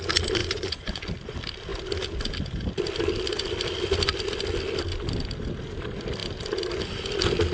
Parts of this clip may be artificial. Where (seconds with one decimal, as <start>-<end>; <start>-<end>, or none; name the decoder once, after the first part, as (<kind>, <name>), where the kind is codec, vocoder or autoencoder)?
0.4-1.0 (vocoder, Vocos)